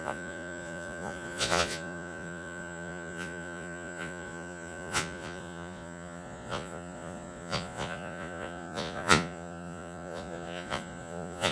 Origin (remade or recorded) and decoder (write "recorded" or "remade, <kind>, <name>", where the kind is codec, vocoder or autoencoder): remade, vocoder, Vocos